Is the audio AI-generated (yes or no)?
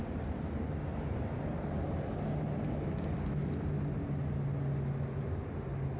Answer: no